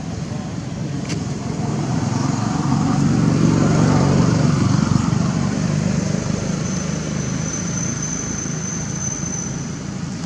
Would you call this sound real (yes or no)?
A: no